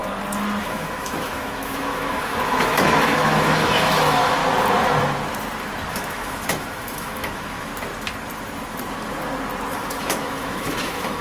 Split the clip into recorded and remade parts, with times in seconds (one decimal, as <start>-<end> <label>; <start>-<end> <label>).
0.0-0.6 recorded; 0.6-4.4 remade; 4.4-5.9 recorded; 5.9-7.7 remade; 7.7-9.7 recorded; 9.7-11.2 remade